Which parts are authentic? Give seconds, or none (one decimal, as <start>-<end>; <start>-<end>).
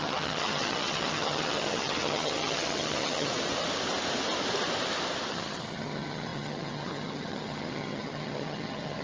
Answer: 3.3-5.3